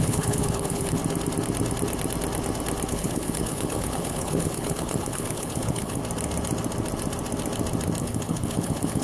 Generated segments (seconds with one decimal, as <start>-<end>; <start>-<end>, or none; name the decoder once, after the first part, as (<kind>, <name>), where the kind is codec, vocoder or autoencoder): 0.0-1.0 (codec, HILCodec); 2.9-6.0; 8.0-9.0